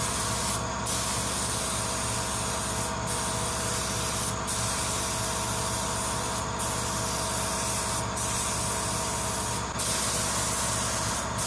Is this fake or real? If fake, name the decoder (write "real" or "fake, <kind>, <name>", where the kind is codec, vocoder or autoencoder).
real